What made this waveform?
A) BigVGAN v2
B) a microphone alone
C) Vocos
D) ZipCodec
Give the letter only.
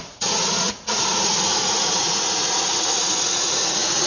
C